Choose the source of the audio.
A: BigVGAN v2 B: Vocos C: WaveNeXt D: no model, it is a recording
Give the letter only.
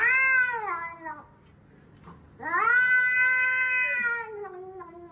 D